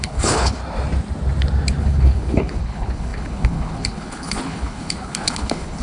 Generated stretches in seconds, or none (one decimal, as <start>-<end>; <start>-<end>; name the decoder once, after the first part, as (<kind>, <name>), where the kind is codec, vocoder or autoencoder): 0.0-0.6 (codec, HILCodec); 1.8-5.8